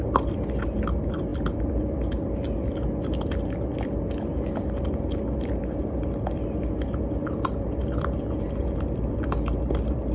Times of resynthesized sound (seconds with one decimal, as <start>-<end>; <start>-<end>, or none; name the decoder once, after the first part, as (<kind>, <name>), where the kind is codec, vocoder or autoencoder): none